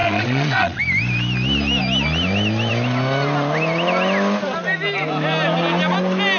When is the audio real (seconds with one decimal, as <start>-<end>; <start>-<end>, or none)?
0.8-6.4